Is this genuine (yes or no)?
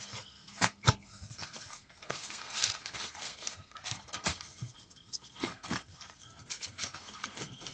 no